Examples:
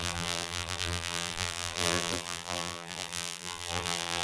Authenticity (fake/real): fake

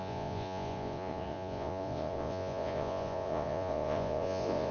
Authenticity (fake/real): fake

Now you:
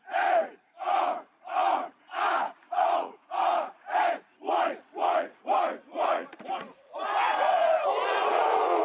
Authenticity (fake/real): fake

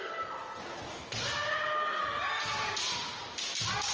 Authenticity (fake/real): real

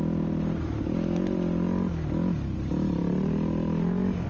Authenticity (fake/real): real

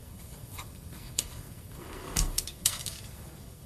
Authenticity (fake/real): fake